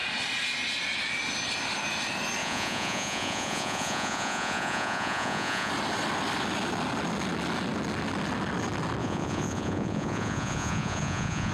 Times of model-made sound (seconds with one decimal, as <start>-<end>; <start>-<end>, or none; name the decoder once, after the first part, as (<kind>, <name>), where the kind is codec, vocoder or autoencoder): 2.4-5.7 (vocoder, Vocos); 9.0-11.5